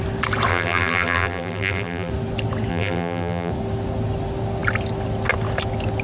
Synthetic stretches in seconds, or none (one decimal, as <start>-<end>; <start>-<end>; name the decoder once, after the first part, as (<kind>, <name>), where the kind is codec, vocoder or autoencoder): 0.5-2.1 (vocoder, BigVGAN v2); 2.7-3.5